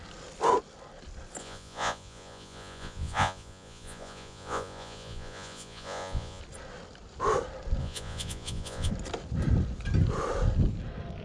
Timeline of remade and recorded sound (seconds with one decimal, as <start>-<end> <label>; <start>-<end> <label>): 0.0-1.4 recorded; 1.4-6.4 remade; 6.4-7.8 recorded; 7.8-8.9 remade; 8.9-11.2 recorded